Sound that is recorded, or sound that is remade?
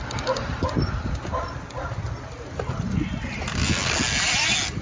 recorded